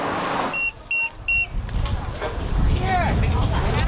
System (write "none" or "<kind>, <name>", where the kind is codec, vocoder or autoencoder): none